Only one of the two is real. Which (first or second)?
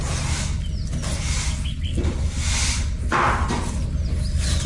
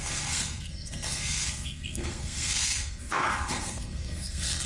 first